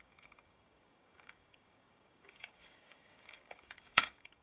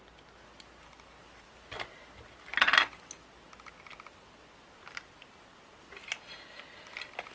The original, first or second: second